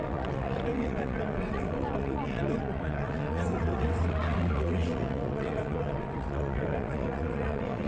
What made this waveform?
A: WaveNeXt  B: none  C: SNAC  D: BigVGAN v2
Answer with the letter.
A